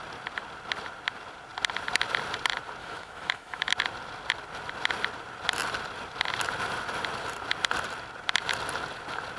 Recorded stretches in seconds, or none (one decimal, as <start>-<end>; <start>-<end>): 0.0-2.8; 3.7-9.4